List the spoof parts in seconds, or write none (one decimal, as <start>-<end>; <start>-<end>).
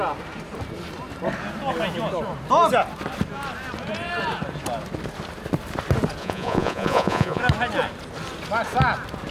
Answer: 6.2-7.4